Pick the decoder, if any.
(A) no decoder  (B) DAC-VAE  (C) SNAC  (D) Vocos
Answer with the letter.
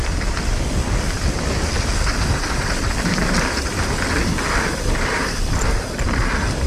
A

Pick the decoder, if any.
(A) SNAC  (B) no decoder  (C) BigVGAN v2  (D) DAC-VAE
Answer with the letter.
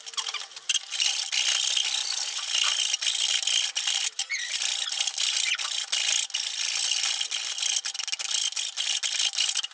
B